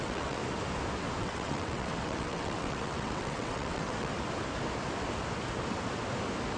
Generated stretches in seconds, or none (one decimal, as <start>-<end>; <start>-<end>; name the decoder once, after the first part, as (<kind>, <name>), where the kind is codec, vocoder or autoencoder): 0.0-0.4 (vocoder, WaveNeXt); 1.2-4.1